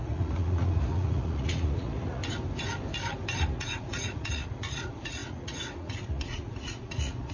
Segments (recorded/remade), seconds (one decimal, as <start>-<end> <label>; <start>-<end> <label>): 0.0-2.2 remade; 2.2-3.4 recorded; 3.4-7.3 remade